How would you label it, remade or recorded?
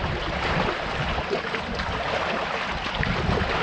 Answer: recorded